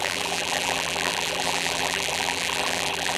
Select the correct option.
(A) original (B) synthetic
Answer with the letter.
B